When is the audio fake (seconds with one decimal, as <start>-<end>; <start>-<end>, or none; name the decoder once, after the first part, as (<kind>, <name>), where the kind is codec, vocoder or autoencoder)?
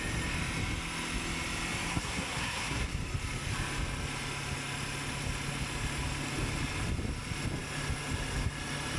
1.9-2.9 (codec, SNAC)